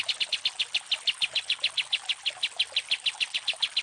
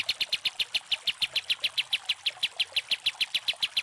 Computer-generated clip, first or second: second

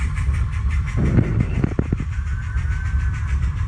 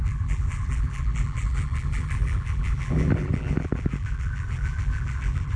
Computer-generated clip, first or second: second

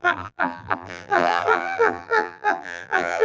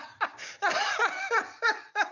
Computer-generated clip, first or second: first